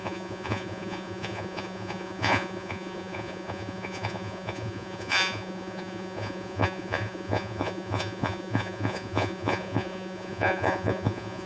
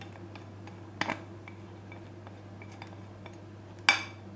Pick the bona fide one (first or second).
second